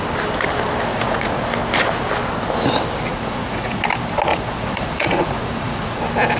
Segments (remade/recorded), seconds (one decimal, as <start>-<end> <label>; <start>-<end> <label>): 0.0-0.9 recorded; 0.9-1.4 remade; 1.4-3.1 recorded; 3.1-3.8 remade; 3.8-4.3 recorded; 4.3-6.0 remade; 6.0-6.4 recorded